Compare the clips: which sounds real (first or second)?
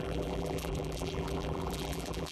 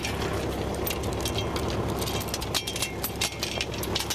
second